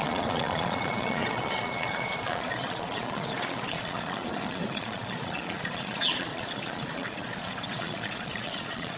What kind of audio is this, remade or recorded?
remade